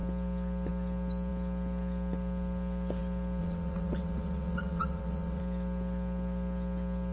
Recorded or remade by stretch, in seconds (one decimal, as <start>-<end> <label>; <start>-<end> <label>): 0.0-3.4 recorded; 3.4-5.4 remade; 5.4-7.1 recorded